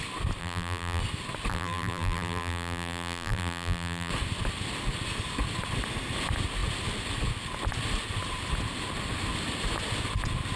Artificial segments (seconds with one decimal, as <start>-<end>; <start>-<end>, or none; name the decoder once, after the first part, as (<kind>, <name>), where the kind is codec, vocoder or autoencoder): 0.4-1.0 (vocoder, BigVGAN v2); 1.5-4.1